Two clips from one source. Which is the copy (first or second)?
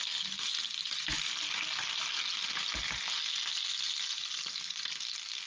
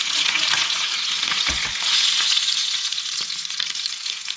second